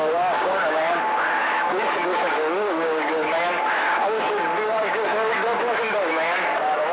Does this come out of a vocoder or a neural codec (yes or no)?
yes